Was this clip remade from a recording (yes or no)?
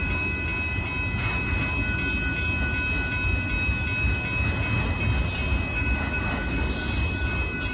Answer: no